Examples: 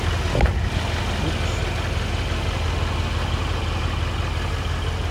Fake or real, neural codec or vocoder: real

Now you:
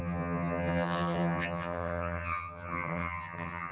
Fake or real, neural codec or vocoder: fake, vocoder, HiFi-GAN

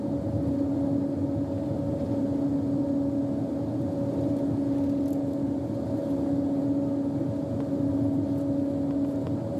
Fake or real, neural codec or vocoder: real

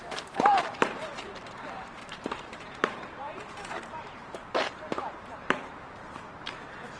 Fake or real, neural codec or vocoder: fake, vocoder, BigVGAN v2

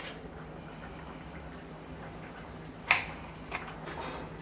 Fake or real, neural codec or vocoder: real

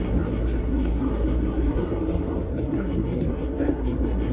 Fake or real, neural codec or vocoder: fake, codec, SNAC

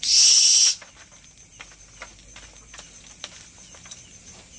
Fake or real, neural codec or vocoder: real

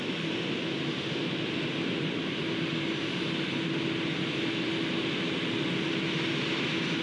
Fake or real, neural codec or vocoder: real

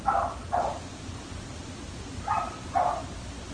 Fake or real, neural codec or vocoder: real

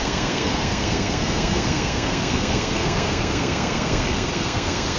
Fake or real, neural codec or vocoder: fake, codec, SNAC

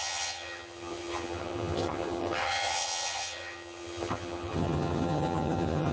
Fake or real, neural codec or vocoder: fake, vocoder, HiFi-GAN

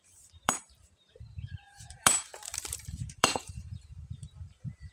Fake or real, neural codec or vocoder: fake, vocoder, BigVGAN v2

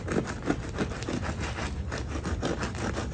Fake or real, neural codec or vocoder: real